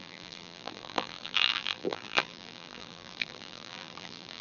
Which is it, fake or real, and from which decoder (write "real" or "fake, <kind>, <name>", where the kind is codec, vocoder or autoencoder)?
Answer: fake, vocoder, BigVGAN v2